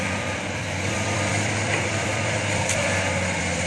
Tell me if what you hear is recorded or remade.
remade